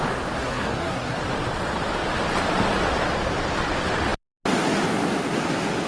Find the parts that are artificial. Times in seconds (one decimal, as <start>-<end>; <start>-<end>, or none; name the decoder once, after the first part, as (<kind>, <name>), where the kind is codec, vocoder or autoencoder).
0.4-1.2 (codec, SNAC)